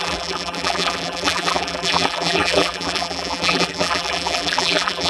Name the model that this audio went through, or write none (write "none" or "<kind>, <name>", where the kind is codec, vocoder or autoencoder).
vocoder, BigVGAN v2